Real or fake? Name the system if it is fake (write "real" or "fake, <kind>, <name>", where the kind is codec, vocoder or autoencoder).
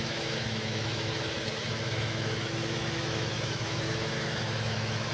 fake, autoencoder, DAC-VAE